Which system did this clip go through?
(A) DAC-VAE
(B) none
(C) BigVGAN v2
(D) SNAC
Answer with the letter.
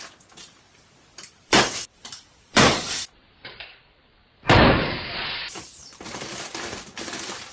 C